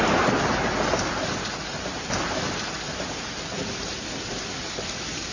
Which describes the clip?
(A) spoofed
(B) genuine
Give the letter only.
B